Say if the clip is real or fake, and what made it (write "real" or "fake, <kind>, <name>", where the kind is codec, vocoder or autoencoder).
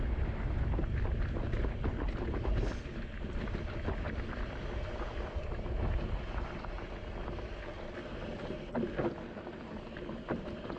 real